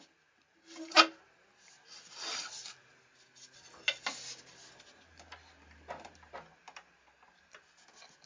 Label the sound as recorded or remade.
recorded